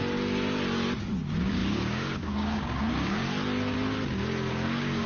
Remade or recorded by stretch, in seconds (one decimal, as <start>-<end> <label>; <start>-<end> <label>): 0.0-1.0 recorded; 1.0-3.2 remade; 3.2-4.5 recorded; 4.5-5.1 remade